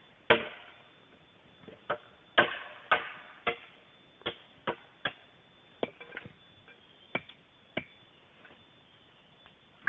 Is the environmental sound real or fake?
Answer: real